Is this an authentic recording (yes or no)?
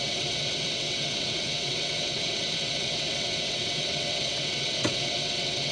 no